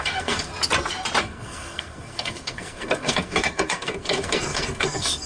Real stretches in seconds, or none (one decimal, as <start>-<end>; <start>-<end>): 0.5-1.2